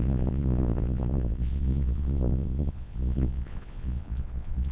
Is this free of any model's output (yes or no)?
no